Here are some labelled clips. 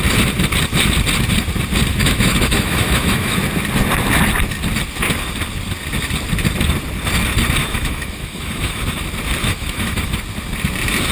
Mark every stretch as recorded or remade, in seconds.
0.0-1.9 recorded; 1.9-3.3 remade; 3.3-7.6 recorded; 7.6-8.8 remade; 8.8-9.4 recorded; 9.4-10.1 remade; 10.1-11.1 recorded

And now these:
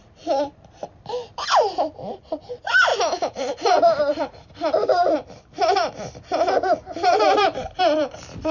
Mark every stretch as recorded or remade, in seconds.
0.0-8.5 remade